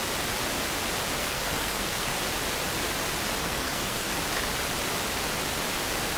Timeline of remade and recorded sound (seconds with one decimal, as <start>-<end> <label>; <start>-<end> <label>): 0.0-1.2 recorded; 1.2-2.2 remade; 2.2-3.4 recorded; 3.4-4.1 remade; 4.1-6.2 recorded